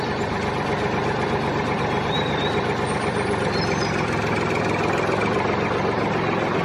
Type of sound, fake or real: real